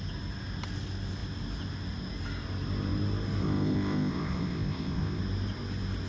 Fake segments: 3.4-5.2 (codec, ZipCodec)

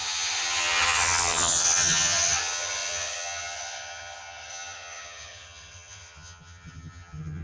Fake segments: 0.0-7.4 (vocoder, HiFi-GAN)